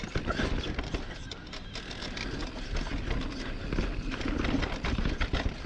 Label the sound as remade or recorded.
recorded